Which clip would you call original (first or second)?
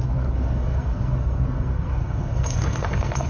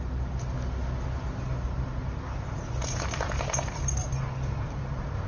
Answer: second